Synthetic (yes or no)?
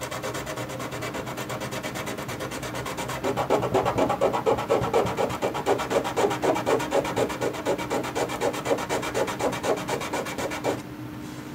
yes